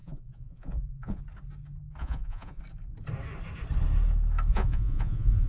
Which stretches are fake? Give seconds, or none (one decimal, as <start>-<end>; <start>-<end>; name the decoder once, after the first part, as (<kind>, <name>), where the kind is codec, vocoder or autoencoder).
0.0-1.2 (vocoder, Vocos); 2.0-2.6; 4.5-5.5